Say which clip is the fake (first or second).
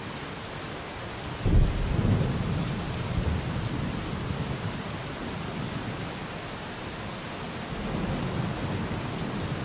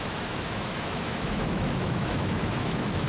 second